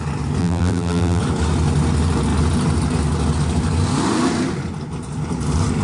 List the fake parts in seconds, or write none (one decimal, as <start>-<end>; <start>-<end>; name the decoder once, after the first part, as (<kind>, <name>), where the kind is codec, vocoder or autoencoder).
0.4-1.2 (vocoder, BigVGAN v2)